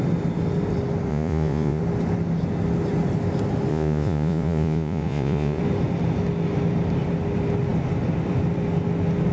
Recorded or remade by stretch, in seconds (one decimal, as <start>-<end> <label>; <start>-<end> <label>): 0.0-1.1 recorded; 1.1-1.8 remade; 1.8-3.7 recorded; 3.7-5.6 remade; 5.6-9.3 recorded